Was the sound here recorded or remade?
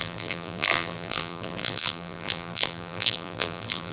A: remade